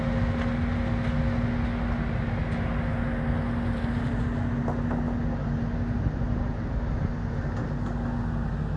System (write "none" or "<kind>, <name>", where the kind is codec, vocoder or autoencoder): none